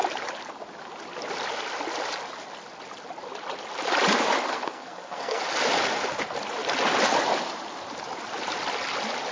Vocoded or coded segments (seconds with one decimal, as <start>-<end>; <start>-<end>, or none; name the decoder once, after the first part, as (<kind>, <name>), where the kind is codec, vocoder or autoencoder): 4.5-5.4 (codec, SNAC)